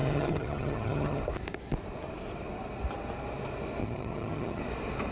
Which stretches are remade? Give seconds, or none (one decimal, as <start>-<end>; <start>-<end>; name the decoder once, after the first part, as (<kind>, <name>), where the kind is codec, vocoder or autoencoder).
0.0-1.2 (vocoder, HiFi-GAN); 3.8-4.6